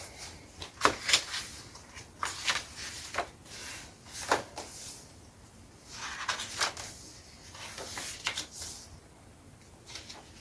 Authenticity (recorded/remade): recorded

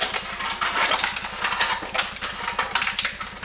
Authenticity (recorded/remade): recorded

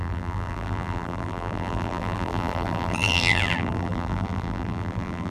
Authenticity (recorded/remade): remade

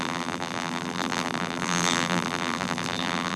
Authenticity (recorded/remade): remade